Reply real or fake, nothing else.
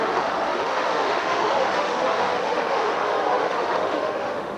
fake